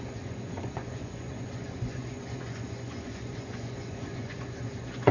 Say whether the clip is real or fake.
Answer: fake